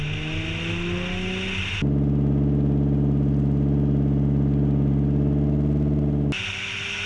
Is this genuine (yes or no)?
yes